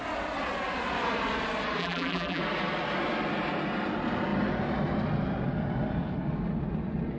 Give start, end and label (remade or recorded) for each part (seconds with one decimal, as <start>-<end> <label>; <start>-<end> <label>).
0.0-1.8 recorded; 1.8-2.4 remade; 2.4-7.2 recorded